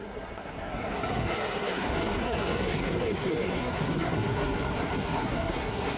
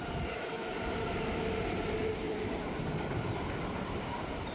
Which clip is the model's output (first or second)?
first